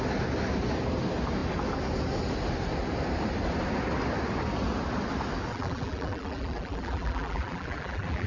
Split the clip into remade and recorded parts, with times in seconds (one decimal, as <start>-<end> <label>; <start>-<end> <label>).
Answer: 0.0-5.5 recorded; 5.5-8.3 remade